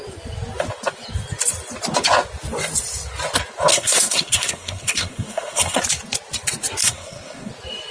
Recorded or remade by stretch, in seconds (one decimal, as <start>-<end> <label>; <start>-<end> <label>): 0.0-3.7 recorded; 3.7-5.8 remade; 5.8-6.8 recorded; 6.8-7.5 remade; 7.5-7.9 recorded